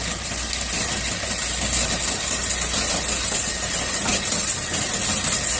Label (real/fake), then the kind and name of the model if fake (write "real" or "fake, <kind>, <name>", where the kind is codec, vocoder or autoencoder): real